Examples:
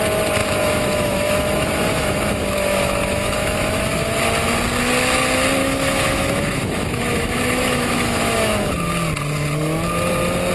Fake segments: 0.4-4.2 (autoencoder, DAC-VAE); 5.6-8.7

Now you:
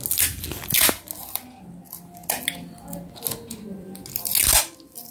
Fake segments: none

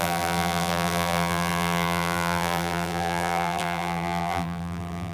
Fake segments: 0.0-5.1 (vocoder, BigVGAN v2)

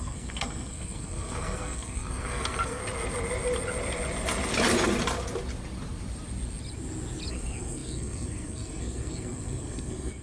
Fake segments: 0.0-2.8 (codec, SNAC); 7.3-10.2